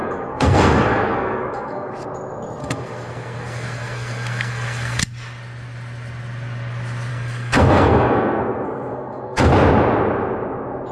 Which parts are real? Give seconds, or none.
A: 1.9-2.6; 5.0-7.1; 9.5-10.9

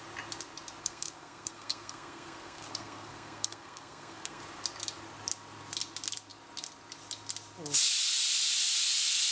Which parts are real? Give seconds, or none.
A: 0.0-0.8; 4.4-9.3

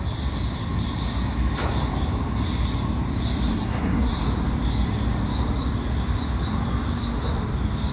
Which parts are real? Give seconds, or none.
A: 0.0-3.5; 4.2-7.9

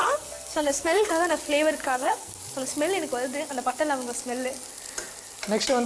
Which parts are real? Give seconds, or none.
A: 1.1-1.8; 2.4-5.9

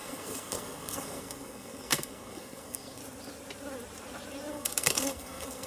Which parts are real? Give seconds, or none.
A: 3.0-4.5

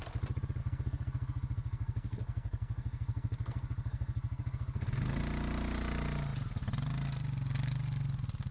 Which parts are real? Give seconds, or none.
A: 0.0-0.6; 5.2-8.5